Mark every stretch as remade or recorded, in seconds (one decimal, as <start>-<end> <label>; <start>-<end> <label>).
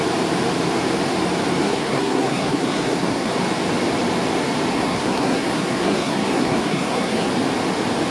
0.0-1.6 recorded; 1.6-3.3 remade; 3.3-4.7 recorded; 4.7-7.3 remade; 7.3-8.1 recorded